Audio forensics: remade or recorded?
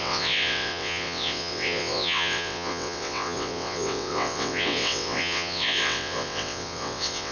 remade